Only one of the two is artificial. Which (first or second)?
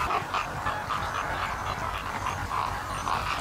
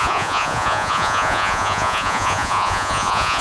second